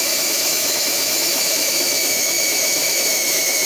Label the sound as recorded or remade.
remade